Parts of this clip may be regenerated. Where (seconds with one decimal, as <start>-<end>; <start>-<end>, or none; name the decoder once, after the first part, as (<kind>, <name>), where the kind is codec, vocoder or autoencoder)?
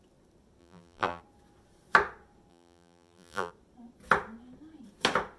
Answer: 0.6-1.2 (vocoder, BigVGAN v2); 2.5-3.5